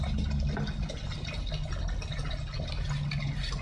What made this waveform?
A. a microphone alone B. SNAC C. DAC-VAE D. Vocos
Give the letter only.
A